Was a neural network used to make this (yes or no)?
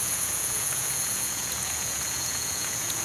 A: yes